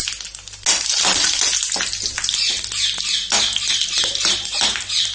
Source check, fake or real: real